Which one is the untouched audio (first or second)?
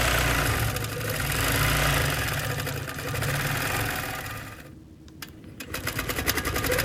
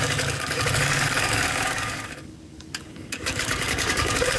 first